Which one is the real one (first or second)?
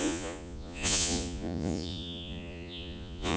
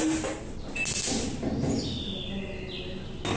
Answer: second